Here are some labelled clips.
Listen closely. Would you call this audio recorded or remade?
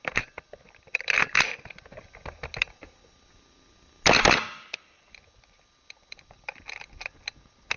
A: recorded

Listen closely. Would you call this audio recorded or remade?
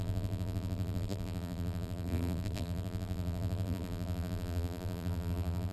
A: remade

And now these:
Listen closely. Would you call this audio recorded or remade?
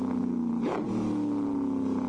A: recorded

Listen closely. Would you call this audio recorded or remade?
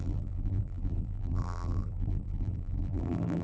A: remade